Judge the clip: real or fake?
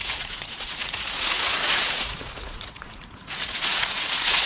fake